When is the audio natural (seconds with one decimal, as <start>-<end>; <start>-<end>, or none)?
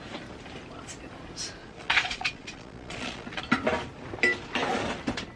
0.0-1.6; 3.4-5.4